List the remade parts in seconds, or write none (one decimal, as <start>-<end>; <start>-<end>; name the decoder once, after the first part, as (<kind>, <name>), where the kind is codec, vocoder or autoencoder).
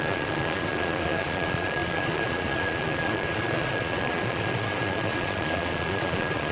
0.0-6.5 (vocoder, Vocos)